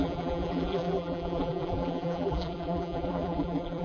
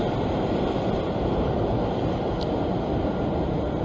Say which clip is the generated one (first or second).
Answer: first